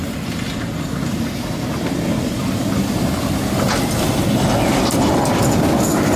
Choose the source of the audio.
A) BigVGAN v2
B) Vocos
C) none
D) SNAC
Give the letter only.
C